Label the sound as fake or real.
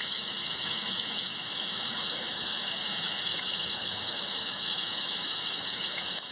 fake